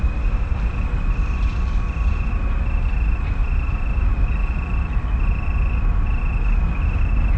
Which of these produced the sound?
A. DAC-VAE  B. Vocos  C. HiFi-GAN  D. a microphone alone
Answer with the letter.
D